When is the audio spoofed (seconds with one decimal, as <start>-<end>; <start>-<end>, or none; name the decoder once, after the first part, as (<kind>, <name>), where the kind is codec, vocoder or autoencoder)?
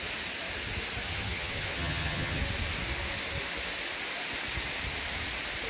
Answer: 1.1-2.4 (vocoder, HiFi-GAN)